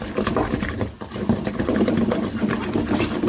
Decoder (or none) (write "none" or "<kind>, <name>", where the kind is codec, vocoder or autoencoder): none